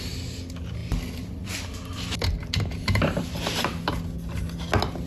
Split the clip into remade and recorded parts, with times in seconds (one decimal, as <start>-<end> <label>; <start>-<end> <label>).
0.0-0.8 recorded; 0.8-3.9 remade; 3.9-5.1 recorded